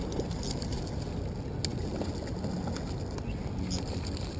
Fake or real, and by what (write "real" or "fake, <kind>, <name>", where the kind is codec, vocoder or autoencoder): real